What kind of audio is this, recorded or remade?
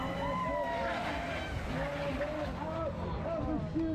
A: recorded